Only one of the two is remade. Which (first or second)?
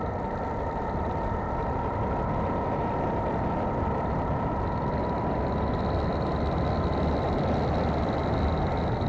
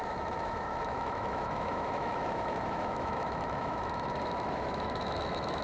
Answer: second